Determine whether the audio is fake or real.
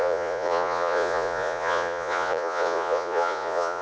fake